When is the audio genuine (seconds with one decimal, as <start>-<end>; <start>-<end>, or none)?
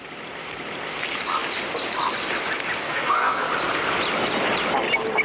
0.0-2.8; 3.5-5.2